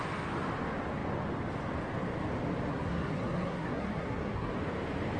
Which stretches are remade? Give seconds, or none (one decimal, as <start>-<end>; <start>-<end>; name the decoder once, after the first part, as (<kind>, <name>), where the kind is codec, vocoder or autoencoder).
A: 2.7-4.5 (codec, SNAC)